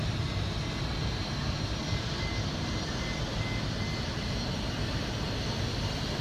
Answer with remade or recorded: recorded